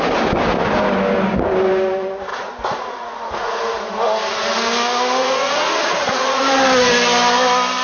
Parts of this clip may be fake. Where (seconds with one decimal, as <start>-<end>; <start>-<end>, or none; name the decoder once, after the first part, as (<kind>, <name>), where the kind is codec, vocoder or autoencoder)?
2.3-3.6 (vocoder, Vocos); 5.2-6.4